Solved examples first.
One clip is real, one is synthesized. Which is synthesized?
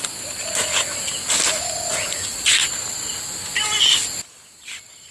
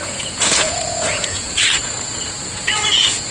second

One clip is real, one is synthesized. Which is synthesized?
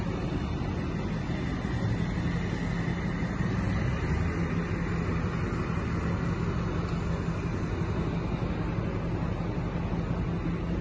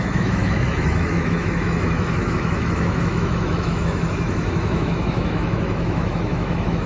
second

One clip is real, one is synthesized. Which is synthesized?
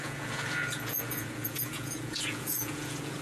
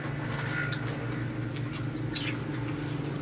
first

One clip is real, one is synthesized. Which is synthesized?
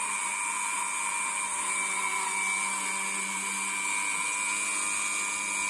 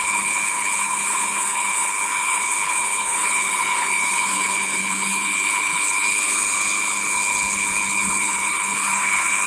second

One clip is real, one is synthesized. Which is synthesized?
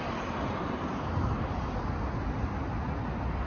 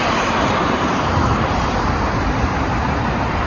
second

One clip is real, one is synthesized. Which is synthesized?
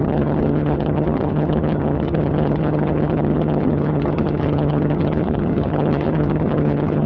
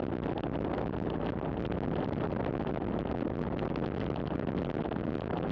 first